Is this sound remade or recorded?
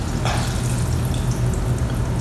recorded